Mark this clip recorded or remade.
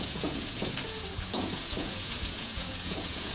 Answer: remade